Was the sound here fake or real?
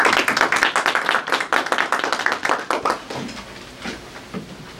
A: real